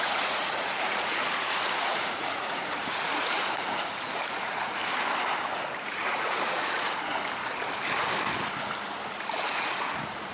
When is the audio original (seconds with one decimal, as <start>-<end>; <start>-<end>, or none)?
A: 4.8-5.8; 7.1-9.4